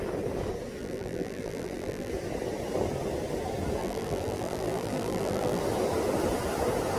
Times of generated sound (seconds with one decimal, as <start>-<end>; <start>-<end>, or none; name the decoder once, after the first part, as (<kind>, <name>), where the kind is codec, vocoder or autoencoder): 0.8-2.1 (vocoder, BigVGAN v2); 3.8-5.6

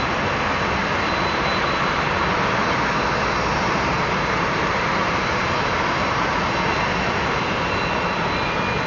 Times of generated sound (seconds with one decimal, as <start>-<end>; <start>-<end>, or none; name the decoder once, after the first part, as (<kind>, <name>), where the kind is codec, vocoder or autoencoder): 0.8-2.2 (vocoder, BigVGAN v2); 3.5-6.3

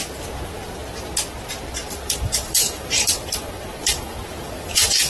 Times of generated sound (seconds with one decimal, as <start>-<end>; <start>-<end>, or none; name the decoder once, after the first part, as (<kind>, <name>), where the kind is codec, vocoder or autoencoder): 1.8-5.1 (vocoder, BigVGAN v2)

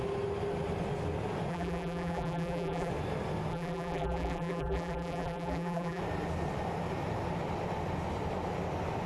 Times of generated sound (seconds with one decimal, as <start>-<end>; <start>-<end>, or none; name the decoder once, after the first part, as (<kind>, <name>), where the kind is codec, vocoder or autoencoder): 1.5-2.9 (vocoder, BigVGAN v2); 3.5-6.0

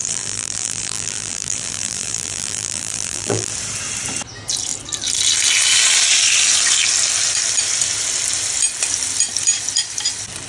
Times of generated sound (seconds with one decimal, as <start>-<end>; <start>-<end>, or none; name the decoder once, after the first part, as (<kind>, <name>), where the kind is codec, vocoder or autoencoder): 0.0-3.5 (vocoder, BigVGAN v2)